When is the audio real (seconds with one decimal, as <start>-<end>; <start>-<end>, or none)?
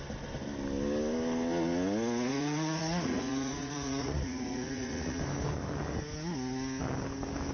0.0-2.3; 5.2-7.5